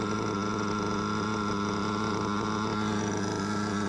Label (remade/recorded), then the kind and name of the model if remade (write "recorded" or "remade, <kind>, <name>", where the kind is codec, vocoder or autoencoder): recorded